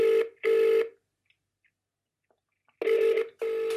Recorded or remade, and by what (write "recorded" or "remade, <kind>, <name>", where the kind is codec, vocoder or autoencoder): recorded